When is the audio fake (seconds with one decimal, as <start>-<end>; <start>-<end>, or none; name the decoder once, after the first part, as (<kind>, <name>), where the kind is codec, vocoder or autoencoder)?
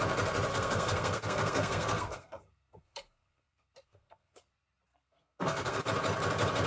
0.5-4.5 (codec, SNAC); 4.9-5.8